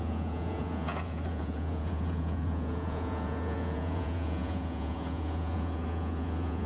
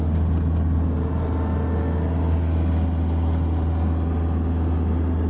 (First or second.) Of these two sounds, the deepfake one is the first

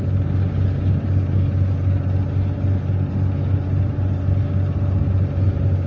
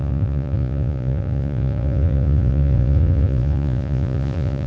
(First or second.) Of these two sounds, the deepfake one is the second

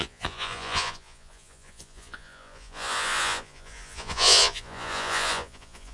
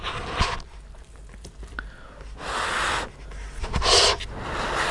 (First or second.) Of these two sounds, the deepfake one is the first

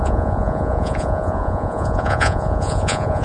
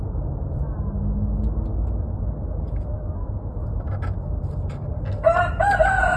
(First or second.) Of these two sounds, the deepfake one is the first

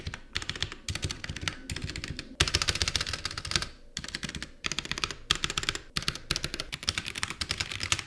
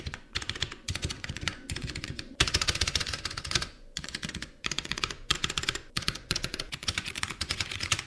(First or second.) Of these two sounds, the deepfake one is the second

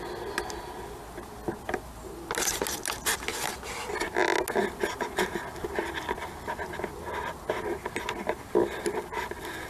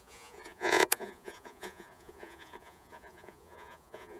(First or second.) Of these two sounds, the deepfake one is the second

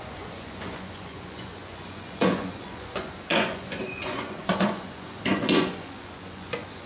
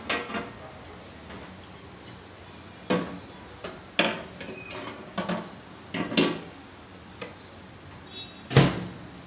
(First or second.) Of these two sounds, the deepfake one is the first